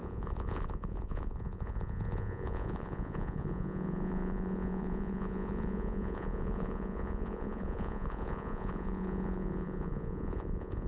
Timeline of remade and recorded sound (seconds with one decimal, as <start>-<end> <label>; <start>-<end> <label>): 0.0-10.9 remade